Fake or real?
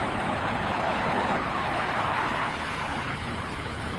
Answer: fake